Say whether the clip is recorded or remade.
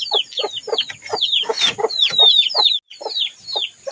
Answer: recorded